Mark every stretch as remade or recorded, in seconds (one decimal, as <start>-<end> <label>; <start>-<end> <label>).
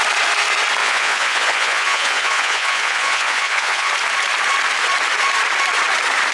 0.0-0.8 recorded; 0.8-3.9 remade; 3.9-6.3 recorded